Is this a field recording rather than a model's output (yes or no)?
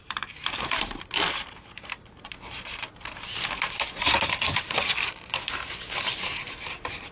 no